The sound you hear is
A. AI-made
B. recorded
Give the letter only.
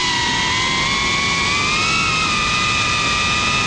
B